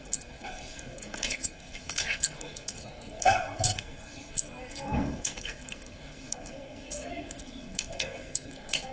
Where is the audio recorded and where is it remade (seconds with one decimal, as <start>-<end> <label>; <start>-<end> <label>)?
0.0-8.9 remade